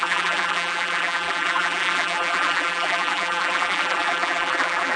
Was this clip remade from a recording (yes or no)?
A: yes